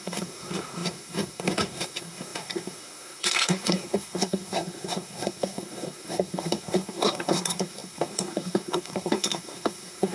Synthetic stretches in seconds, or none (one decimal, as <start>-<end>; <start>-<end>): 0.0-10.1